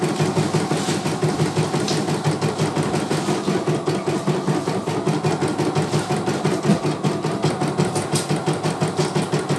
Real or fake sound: real